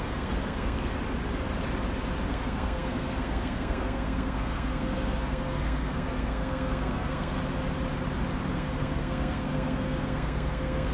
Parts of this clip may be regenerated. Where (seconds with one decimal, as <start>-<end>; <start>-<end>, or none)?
0.0-0.9; 2.3-7.4; 8.5-10.9